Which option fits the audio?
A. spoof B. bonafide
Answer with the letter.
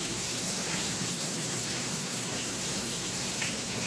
A